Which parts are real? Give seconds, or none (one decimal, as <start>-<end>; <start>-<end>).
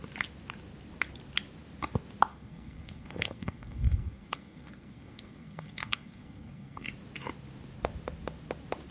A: 0.0-2.3; 6.9-8.9